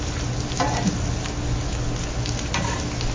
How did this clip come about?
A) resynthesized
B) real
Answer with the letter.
B